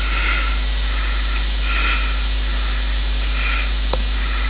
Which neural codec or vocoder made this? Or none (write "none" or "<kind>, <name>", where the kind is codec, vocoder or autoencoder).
none